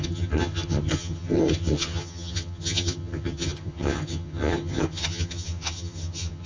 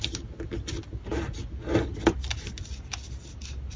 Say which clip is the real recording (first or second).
second